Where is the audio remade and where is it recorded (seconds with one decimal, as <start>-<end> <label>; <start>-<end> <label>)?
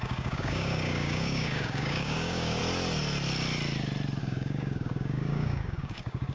0.0-2.6 remade; 2.6-4.2 recorded; 4.2-6.3 remade